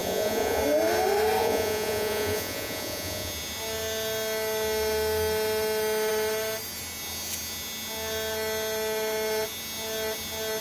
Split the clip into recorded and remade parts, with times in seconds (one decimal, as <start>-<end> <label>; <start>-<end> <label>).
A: 0.0-0.6 remade; 0.6-1.4 recorded; 1.4-3.3 remade; 3.3-10.6 recorded